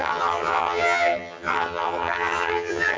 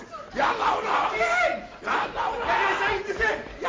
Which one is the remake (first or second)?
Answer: first